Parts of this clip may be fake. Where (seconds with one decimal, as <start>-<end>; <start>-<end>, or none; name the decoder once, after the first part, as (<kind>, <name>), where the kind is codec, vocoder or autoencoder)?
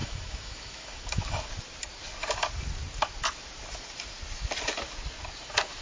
0.0-1.5 (autoencoder, DAC-VAE)